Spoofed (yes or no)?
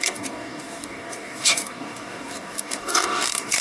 yes